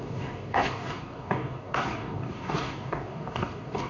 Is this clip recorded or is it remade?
remade